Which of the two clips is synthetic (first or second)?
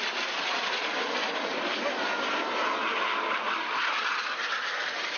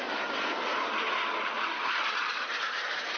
second